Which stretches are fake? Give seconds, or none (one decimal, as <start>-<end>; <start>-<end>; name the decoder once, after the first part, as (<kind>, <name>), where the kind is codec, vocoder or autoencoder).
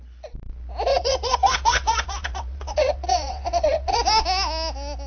0.9-4.0 (vocoder, WaveNeXt)